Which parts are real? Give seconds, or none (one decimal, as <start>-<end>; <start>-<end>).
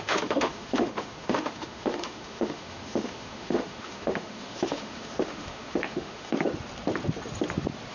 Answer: 6.3-7.9